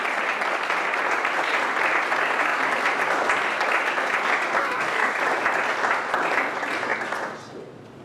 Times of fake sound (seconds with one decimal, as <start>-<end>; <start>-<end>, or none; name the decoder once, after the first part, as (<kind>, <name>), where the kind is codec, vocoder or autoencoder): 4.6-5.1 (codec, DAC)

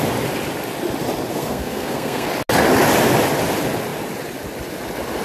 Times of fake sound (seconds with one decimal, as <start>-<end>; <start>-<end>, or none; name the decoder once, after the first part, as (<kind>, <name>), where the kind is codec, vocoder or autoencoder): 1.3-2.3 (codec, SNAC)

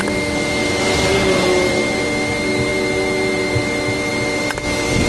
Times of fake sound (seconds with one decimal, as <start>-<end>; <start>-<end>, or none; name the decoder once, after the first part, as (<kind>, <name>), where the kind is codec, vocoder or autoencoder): none